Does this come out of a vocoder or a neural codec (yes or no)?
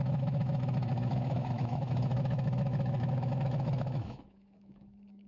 yes